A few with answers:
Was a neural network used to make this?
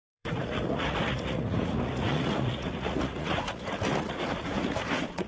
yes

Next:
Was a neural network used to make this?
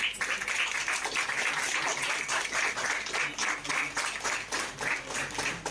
no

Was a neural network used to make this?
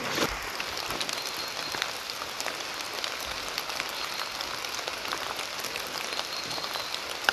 no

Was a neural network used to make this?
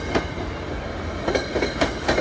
no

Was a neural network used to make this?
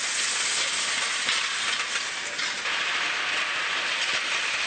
no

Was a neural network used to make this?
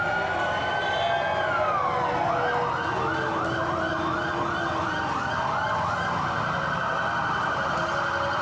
no